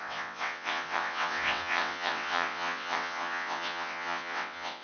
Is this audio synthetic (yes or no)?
yes